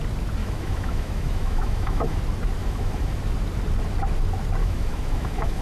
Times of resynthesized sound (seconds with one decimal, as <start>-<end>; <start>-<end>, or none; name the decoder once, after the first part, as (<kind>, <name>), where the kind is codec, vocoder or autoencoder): 0.4-2.2 (autoencoder, DAC-VAE); 2.6-3.2; 4.6-5.6